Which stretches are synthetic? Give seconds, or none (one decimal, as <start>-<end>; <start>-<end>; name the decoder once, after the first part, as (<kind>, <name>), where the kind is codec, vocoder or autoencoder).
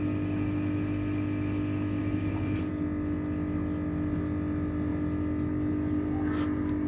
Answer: 2.0-2.7 (vocoder, BigVGAN v2)